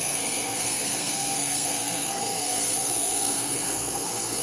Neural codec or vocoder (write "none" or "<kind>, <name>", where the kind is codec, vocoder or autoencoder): codec, SNAC